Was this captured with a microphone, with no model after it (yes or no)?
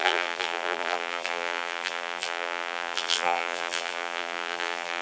no